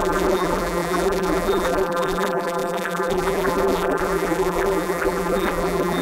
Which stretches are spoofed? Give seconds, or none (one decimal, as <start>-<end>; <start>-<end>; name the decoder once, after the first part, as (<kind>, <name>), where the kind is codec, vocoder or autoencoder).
0.0-6.0 (vocoder, BigVGAN v2)